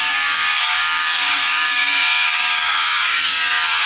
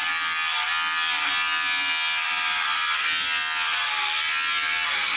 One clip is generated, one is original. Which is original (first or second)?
second